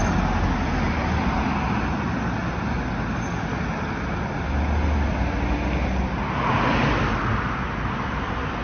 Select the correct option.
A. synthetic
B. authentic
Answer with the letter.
B